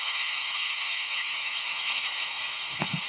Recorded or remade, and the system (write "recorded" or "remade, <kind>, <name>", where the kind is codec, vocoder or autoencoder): remade, autoencoder, DAC-VAE